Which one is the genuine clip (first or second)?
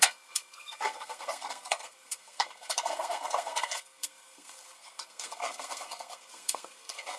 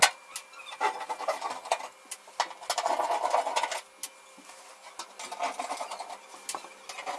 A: second